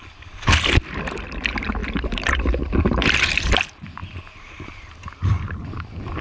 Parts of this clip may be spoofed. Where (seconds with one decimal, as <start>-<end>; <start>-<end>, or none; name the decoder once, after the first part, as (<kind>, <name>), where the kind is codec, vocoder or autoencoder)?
1.8-3.5 (vocoder, BigVGAN v2); 4.0-5.5